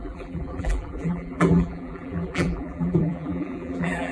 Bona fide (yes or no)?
no